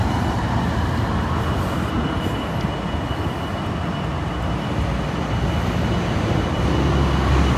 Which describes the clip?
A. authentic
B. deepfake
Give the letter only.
A